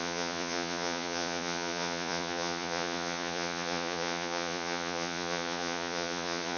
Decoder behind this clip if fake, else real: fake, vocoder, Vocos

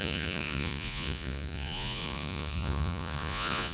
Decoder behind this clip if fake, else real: fake, vocoder, Vocos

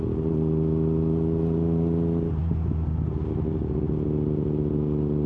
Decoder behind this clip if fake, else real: real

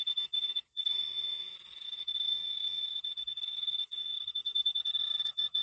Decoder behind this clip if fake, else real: fake, vocoder, Vocos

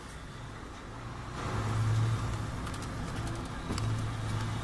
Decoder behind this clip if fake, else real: real